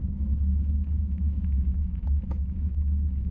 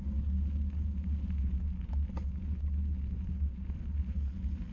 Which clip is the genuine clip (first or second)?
second